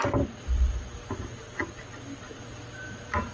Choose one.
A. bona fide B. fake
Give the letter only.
A